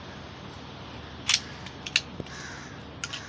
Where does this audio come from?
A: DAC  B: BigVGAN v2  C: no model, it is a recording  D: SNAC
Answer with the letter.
C